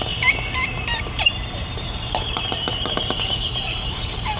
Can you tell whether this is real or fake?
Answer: fake